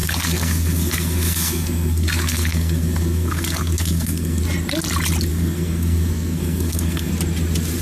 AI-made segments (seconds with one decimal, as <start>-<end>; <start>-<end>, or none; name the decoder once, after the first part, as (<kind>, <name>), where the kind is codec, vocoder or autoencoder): 0.0-4.4 (codec, SNAC); 5.3-7.1